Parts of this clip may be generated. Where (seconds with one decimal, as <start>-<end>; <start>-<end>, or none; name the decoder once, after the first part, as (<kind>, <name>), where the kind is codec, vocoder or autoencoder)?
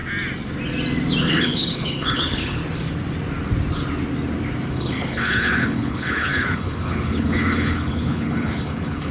1.3-2.6 (codec, HILCodec); 4.7-9.1